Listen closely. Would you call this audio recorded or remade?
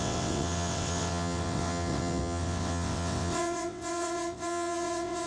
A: remade